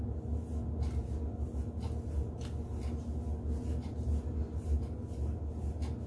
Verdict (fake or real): real